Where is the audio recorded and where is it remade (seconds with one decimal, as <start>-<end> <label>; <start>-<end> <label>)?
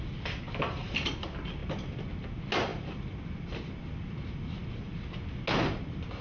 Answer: 0.0-6.2 recorded